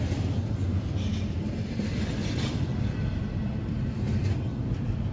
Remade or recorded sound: recorded